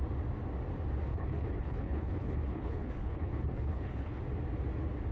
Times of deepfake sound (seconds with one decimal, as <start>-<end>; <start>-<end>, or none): 1.1-4.2